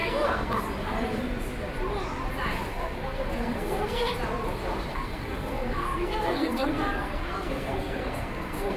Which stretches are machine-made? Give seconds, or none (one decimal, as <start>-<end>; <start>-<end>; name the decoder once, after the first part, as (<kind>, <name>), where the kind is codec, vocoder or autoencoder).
0.0-0.6 (codec, SNAC); 2.7-4.1; 4.9-8.8